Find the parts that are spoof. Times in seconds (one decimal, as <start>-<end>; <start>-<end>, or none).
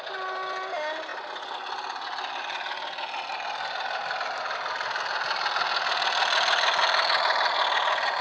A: none